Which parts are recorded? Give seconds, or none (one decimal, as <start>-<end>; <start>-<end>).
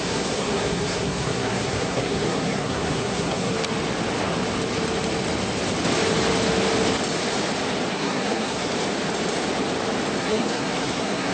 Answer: 3.5-7.9; 8.7-10.2